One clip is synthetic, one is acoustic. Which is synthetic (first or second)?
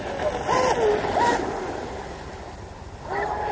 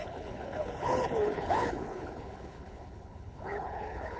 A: second